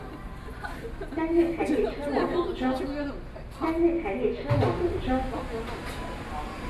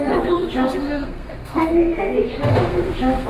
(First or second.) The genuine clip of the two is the first